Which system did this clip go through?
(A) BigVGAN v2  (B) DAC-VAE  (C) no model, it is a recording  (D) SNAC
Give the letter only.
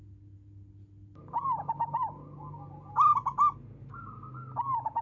C